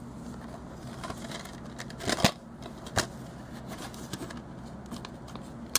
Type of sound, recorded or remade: recorded